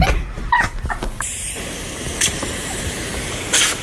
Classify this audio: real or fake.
fake